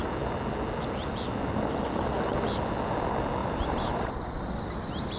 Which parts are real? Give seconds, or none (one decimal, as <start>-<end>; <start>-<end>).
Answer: 0.0-3.4; 4.1-5.2